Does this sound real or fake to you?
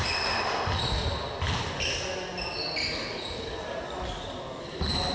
real